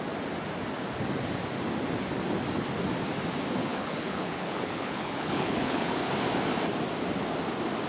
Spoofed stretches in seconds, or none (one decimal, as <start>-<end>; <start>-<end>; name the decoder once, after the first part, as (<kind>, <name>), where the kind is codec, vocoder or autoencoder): 3.7-6.1 (codec, HILCodec)